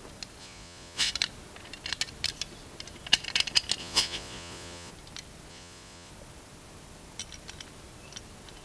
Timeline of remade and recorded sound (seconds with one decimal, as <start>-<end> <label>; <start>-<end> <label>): 0.0-0.4 recorded; 0.4-1.1 remade; 1.1-3.8 recorded; 3.8-4.9 remade; 4.9-5.5 recorded; 5.5-6.1 remade; 6.1-8.6 recorded